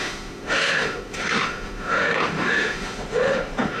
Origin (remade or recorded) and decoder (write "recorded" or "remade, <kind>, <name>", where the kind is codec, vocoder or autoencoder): remade, autoencoder, DAC-VAE